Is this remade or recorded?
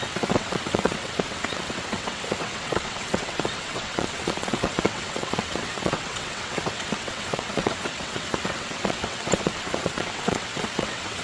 remade